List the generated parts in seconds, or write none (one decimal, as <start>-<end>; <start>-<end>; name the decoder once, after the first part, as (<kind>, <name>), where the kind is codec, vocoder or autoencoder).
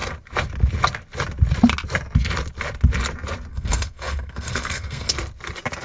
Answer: 3.5-5.1 (codec, SNAC)